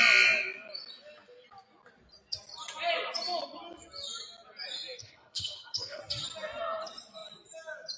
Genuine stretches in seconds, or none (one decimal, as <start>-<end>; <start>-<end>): 0.0-5.0; 6.0-8.0